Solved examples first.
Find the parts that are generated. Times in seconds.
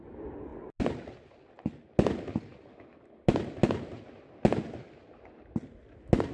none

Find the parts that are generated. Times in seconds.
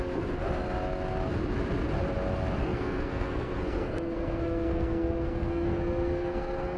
2.6-6.8 (codec, SNAC)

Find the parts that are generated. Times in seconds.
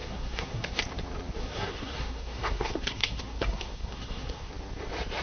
0.0-0.8 (codec, SNAC); 1.4-4.5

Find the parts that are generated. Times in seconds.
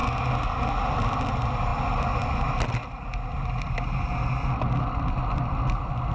none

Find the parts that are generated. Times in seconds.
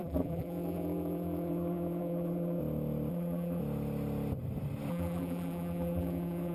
0.0-2.6 (vocoder, BigVGAN v2); 3.1-3.6; 4.9-6.5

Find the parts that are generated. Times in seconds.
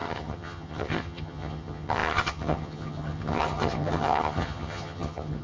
0.0-5.4 (vocoder, HiFi-GAN)